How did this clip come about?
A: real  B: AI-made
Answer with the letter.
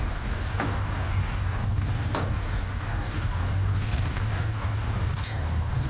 B